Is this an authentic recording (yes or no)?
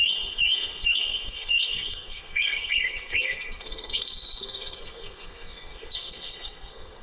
no